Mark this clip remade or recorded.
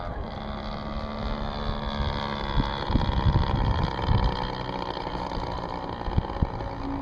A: recorded